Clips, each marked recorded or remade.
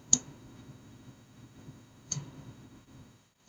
remade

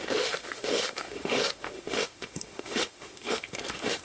remade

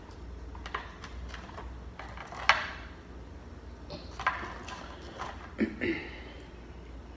recorded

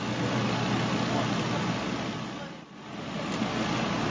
recorded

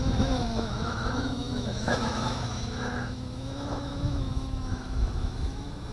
remade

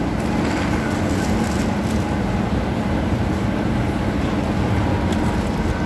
recorded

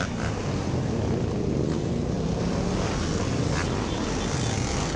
recorded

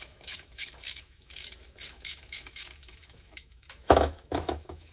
remade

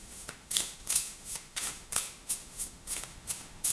remade